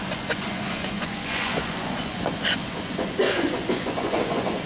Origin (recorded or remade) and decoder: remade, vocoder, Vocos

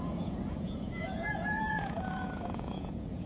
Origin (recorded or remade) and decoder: remade, vocoder, Vocos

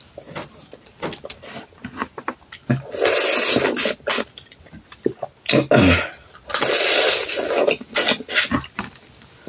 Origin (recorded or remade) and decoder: recorded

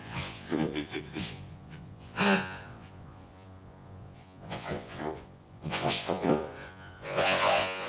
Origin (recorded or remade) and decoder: remade, vocoder, Vocos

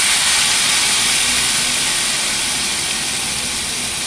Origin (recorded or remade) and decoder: recorded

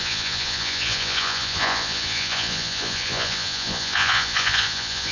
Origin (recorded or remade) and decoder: remade, vocoder, Vocos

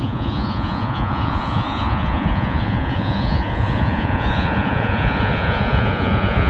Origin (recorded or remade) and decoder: remade, vocoder, Vocos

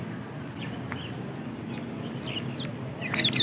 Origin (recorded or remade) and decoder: recorded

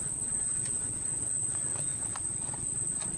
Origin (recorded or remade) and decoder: remade, vocoder, Vocos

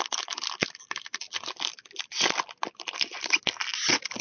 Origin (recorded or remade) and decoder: recorded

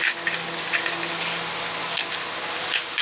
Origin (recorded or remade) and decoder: recorded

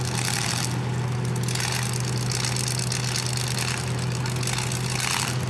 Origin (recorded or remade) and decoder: recorded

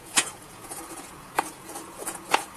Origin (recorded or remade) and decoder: remade, vocoder, Vocos